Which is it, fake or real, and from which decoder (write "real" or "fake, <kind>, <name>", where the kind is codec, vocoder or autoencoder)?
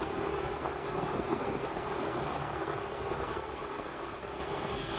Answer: fake, codec, SNAC